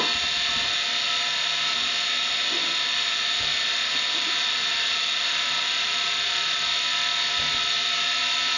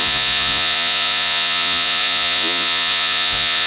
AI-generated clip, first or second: second